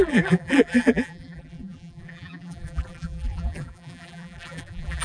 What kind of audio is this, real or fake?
fake